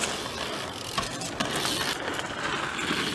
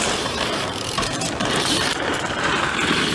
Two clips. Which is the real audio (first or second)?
first